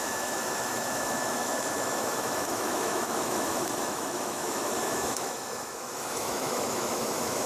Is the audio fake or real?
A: fake